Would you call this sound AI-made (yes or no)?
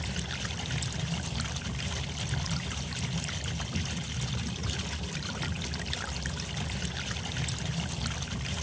no